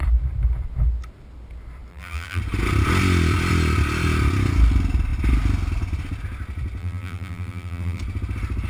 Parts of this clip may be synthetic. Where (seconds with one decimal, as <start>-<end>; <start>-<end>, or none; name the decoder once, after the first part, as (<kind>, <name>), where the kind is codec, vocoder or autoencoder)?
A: 1.9-2.4 (vocoder, BigVGAN v2); 6.8-8.0